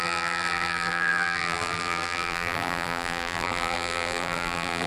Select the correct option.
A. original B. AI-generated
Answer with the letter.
B